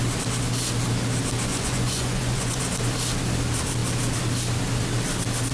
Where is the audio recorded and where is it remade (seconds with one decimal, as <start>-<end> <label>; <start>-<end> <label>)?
0.0-1.5 recorded; 1.5-2.6 remade; 2.6-5.5 recorded